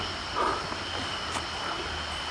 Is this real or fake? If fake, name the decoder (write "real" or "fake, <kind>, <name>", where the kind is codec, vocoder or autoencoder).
real